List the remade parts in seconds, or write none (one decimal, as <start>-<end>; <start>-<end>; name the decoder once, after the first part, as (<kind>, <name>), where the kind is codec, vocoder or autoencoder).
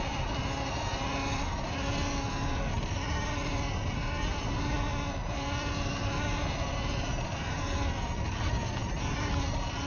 none